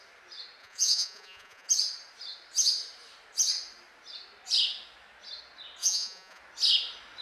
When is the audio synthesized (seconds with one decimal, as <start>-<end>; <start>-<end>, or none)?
0.6-1.7; 5.8-6.4

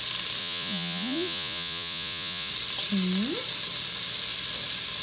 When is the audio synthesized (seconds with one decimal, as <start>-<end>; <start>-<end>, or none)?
0.4-2.5

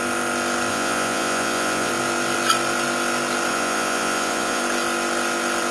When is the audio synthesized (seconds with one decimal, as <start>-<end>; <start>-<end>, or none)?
0.7-1.9; 3.5-4.6

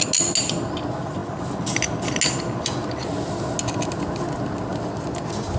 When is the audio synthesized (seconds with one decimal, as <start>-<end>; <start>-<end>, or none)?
none

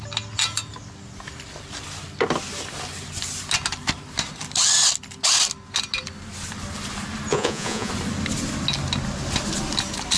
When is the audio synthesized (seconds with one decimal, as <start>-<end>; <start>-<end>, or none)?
7.3-7.9

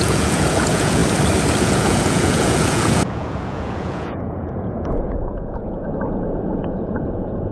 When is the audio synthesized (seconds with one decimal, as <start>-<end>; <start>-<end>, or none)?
0.0-1.0; 1.6-5.8; 6.4-7.5